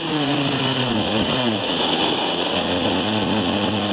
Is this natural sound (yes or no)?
no